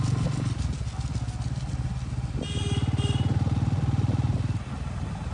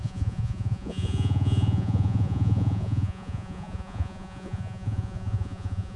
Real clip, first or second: first